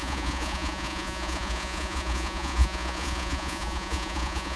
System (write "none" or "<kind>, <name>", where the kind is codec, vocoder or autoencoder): vocoder, Vocos